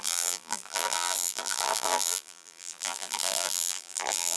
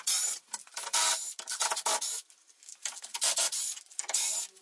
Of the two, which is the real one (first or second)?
second